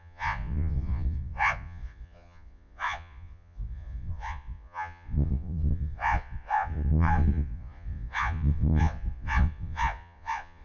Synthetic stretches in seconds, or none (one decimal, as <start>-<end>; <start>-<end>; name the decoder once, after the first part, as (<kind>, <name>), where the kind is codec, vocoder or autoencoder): 0.0-10.6 (vocoder, Vocos)